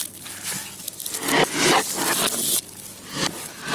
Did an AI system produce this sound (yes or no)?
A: no